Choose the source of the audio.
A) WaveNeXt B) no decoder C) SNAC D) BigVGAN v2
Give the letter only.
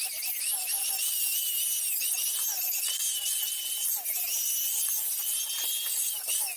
B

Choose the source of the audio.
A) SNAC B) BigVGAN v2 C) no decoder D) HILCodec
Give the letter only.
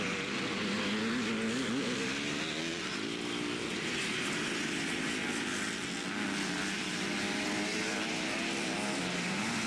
C